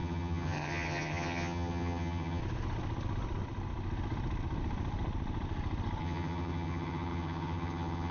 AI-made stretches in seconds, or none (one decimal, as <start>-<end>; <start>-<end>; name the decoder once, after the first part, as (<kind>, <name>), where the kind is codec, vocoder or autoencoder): 0.0-2.4 (vocoder, HiFi-GAN); 6.0-8.1